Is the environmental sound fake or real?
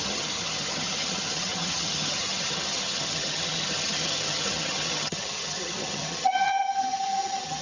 fake